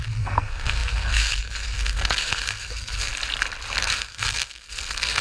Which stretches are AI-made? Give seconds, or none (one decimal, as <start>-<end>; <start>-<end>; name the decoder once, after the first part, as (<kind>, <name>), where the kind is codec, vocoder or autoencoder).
0.0-3.1 (codec, SNAC); 3.8-5.2